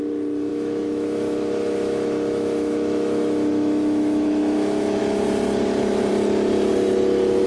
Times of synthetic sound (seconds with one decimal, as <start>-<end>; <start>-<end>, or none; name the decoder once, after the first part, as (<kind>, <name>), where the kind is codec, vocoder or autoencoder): 0.5-5.0 (autoencoder, DAC-VAE)